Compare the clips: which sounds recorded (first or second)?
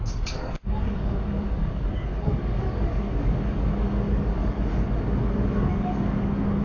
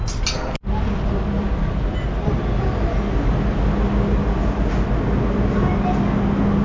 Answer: second